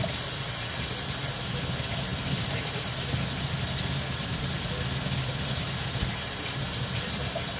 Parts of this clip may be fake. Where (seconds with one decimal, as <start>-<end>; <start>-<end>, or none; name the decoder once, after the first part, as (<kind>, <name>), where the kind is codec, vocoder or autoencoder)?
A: none